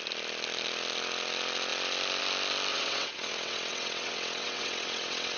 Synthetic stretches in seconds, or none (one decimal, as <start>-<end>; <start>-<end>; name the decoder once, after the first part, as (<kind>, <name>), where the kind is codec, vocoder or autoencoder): 2.7-5.4 (vocoder, WaveNeXt)